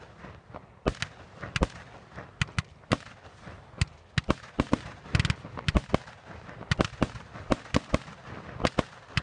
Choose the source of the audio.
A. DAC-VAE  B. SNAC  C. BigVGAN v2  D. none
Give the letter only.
D